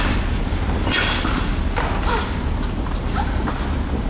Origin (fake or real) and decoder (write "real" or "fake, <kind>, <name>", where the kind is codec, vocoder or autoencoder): real